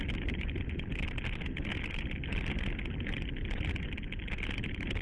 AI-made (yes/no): no